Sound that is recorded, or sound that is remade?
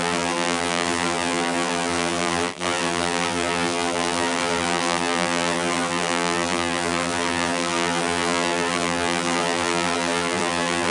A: remade